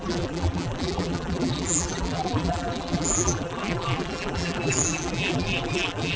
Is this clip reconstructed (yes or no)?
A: yes